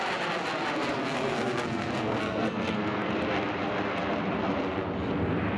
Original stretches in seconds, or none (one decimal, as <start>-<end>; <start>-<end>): 0.0-1.0; 3.1-5.6